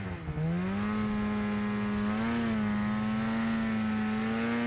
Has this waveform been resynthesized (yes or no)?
no